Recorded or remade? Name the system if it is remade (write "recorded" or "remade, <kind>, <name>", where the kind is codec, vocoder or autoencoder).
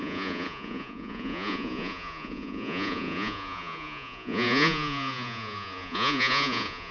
remade, vocoder, Vocos